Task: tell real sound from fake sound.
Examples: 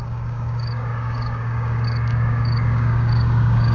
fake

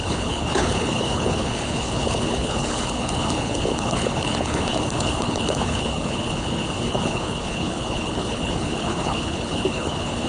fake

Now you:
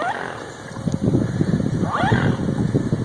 real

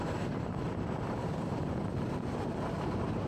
fake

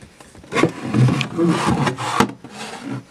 real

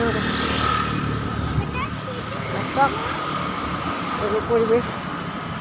real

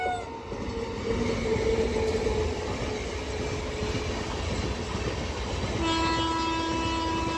real